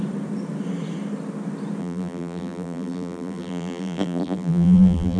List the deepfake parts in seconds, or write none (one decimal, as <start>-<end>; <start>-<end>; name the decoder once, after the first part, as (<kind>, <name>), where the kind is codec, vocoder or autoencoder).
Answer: 1.8-5.2 (vocoder, BigVGAN v2)